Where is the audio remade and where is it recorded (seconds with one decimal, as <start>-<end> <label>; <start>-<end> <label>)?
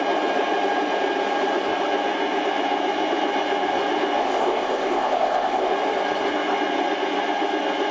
0.0-4.2 recorded; 4.2-5.7 remade; 5.7-7.9 recorded